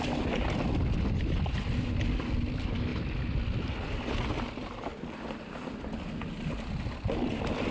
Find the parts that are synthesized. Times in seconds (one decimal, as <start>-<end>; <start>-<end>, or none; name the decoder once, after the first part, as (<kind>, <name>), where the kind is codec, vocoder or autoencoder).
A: none